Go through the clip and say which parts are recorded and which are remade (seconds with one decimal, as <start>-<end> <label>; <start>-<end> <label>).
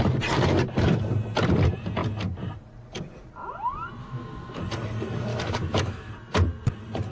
0.0-4.0 recorded; 4.0-4.6 remade; 4.6-5.3 recorded; 5.3-6.1 remade; 6.1-7.1 recorded